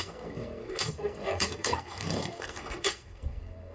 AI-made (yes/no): yes